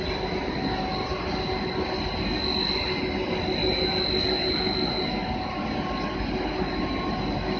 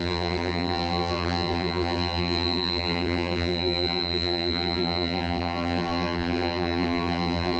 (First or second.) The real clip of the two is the first